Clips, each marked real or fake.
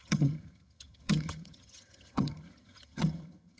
fake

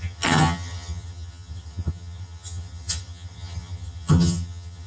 fake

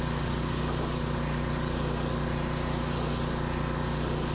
real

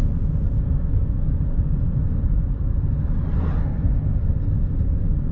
real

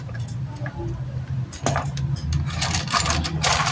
real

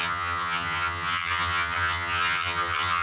fake